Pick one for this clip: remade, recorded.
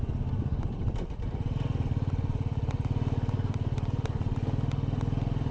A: recorded